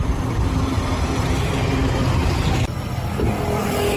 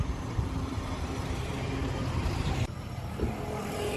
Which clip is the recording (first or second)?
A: first